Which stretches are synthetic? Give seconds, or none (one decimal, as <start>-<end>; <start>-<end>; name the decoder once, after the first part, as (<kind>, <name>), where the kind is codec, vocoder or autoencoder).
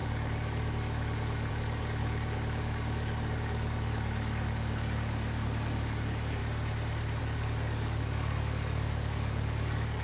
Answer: 0.0-6.4 (codec, DAC); 7.2-10.0